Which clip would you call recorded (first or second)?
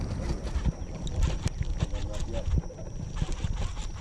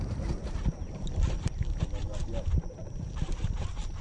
first